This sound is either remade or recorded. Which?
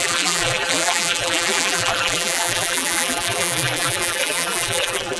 remade